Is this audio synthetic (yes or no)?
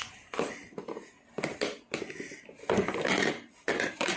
no